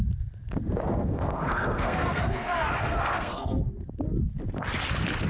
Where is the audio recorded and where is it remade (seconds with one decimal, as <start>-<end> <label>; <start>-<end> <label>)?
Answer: 0.0-0.9 recorded; 0.9-3.7 remade; 3.7-5.3 recorded